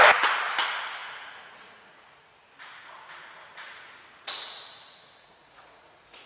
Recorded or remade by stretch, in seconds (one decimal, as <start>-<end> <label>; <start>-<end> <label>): 0.0-1.0 recorded; 1.0-2.3 remade; 2.3-2.7 recorded; 2.7-6.3 remade